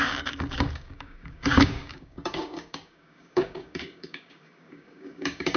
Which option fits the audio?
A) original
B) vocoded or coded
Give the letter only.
B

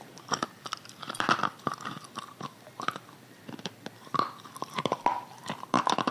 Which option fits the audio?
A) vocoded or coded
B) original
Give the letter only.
B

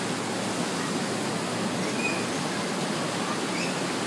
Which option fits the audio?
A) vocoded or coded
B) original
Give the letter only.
B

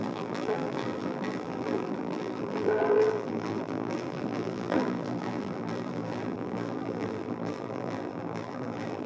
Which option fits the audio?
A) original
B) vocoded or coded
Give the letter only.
B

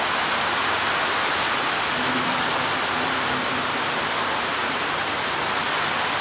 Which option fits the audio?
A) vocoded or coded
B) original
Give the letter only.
B